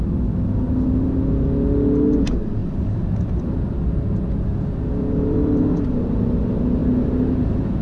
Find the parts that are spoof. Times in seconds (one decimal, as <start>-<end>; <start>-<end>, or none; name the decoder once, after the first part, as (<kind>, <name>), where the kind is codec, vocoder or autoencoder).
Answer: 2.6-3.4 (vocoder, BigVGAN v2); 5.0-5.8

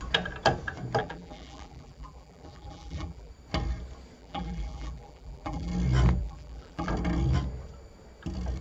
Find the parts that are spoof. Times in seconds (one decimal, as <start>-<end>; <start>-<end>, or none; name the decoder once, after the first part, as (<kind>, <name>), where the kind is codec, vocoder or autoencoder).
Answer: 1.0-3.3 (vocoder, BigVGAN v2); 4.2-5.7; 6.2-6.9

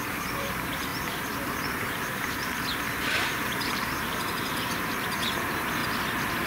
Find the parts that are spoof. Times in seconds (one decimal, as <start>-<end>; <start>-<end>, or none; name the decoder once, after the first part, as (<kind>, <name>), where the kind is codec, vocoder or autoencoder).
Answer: 0.0-0.9 (vocoder, BigVGAN v2); 1.8-5.8

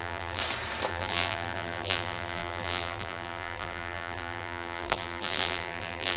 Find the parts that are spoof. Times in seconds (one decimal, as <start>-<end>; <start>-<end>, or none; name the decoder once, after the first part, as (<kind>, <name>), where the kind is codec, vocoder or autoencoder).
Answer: 0.0-0.4 (vocoder, BigVGAN v2); 0.9-6.2

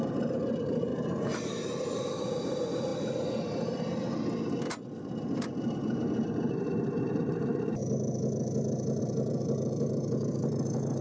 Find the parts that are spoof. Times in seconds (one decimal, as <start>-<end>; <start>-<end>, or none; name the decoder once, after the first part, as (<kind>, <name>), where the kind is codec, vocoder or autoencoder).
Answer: 0.0-0.9 (vocoder, BigVGAN v2); 1.7-2.9; 7.0-7.8; 9.0-11.0

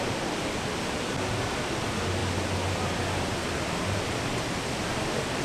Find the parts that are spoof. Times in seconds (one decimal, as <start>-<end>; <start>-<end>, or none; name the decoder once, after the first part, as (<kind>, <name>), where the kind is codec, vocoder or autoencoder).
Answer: none

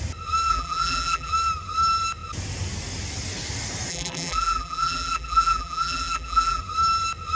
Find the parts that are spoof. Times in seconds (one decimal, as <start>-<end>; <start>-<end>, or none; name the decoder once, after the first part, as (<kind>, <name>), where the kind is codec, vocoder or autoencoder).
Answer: 0.5-1.3 (vocoder, BigVGAN v2); 3.9-6.6